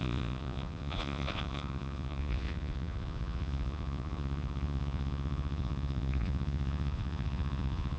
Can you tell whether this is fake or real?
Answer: fake